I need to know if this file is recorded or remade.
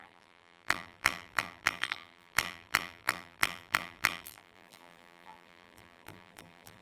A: remade